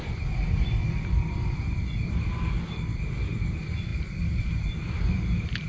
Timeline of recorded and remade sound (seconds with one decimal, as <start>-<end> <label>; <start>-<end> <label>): 0.0-5.7 recorded